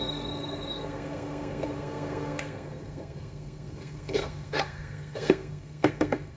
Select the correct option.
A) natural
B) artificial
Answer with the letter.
B